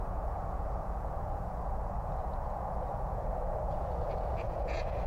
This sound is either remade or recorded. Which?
remade